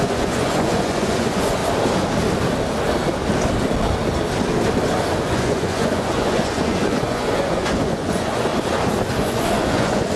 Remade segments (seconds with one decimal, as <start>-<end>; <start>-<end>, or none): 0.0-1.6; 5.3-8.5; 9.2-10.2